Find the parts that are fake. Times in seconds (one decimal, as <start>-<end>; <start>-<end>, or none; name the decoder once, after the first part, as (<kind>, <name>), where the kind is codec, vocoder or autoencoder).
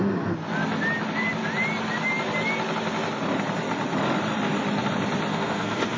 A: 5.3-6.0 (codec, SNAC)